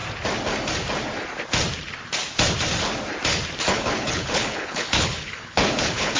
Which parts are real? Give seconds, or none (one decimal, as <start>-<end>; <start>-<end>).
0.0-3.7